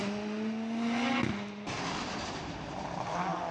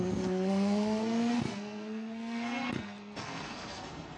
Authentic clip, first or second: first